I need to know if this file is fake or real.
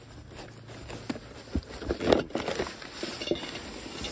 real